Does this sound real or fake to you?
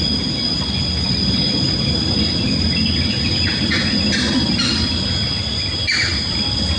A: real